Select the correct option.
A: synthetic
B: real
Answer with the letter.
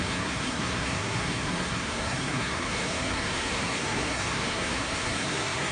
A